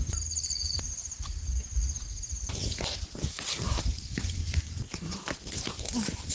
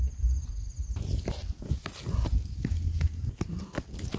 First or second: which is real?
second